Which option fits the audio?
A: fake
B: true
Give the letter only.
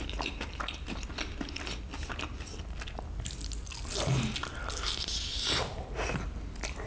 B